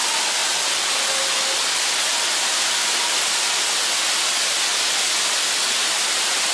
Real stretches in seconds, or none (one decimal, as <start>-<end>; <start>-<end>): 0.0-6.5